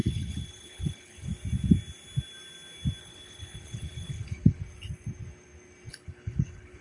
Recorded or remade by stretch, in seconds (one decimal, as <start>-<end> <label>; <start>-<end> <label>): 0.0-1.3 remade; 1.3-3.0 recorded; 3.0-4.6 remade; 4.6-5.9 recorded; 5.9-6.8 remade